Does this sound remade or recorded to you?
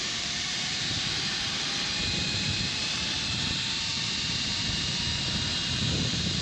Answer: remade